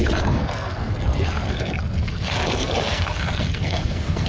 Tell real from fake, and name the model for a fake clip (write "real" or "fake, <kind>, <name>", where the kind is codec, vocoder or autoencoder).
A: fake, codec, SNAC